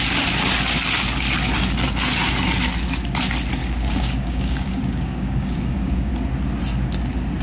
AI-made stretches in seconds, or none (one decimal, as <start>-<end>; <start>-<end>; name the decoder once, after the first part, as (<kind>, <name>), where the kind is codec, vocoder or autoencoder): 3.6-6.1 (codec, DAC)